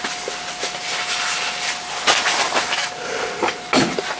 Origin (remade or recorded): recorded